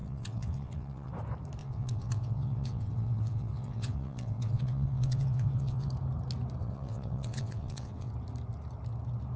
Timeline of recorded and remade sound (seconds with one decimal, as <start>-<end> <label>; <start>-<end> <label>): 0.0-1.1 remade; 1.1-1.6 recorded; 1.6-5.9 remade; 5.9-6.6 recorded; 6.6-8.1 remade; 8.1-9.4 recorded